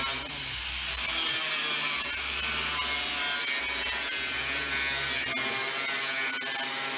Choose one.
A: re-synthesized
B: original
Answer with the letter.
B